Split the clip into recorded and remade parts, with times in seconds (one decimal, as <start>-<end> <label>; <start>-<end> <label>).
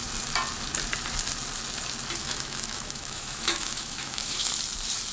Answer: 0.0-2.2 recorded; 2.2-4.5 remade; 4.5-5.1 recorded